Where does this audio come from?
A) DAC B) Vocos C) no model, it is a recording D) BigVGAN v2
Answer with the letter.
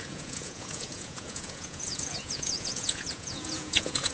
B